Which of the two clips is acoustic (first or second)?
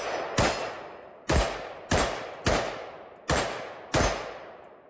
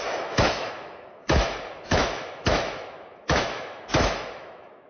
first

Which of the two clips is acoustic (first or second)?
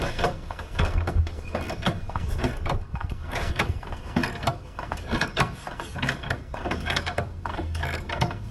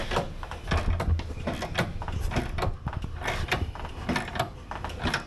second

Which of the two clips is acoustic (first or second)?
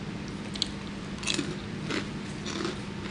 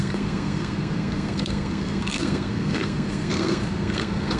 first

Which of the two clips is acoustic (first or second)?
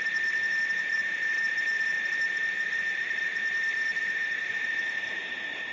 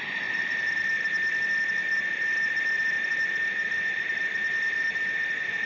second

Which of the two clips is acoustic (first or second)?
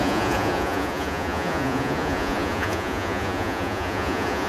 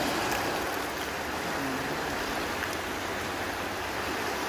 second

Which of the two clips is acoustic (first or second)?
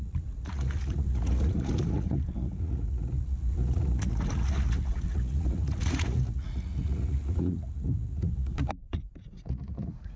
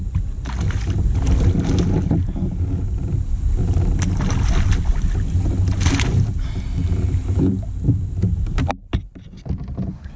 second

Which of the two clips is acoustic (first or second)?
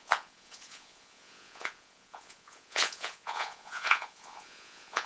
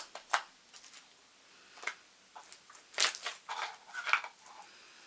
second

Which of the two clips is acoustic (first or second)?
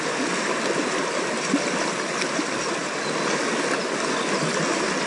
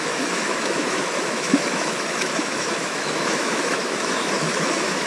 first